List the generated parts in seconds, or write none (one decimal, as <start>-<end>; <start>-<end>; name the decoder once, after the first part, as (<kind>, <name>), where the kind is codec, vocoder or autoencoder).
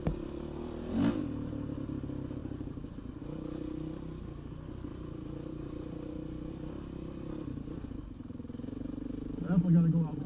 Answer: 2.4-3.2 (vocoder, BigVGAN v2); 4.9-6.5